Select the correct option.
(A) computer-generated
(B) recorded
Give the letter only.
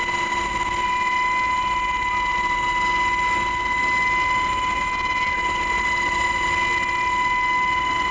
B